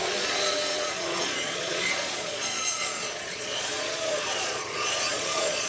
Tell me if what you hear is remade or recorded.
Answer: remade